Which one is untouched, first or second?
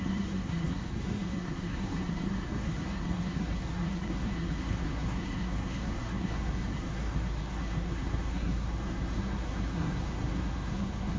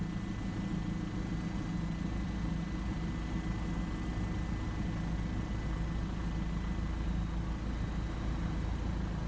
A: second